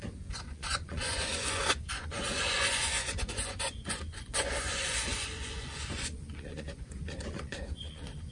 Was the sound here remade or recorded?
remade